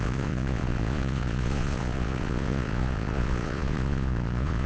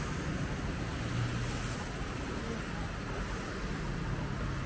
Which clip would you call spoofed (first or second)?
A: first